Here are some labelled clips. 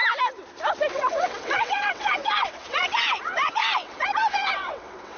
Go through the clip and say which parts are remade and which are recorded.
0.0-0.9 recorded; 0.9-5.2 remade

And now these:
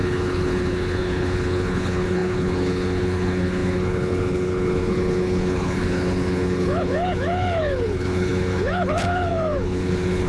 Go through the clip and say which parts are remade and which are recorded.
0.0-10.3 remade

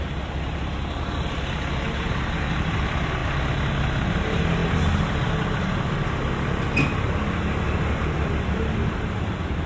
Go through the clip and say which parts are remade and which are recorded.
0.0-4.6 recorded; 4.6-5.5 remade; 5.5-9.7 recorded

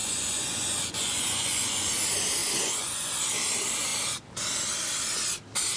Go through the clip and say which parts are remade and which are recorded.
0.0-2.0 remade; 2.0-2.4 recorded; 2.4-3.1 remade; 3.1-5.8 recorded

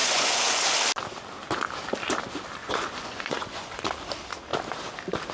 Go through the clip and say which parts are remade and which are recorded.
0.0-0.6 remade; 0.6-2.6 recorded; 2.6-3.8 remade; 3.8-5.3 recorded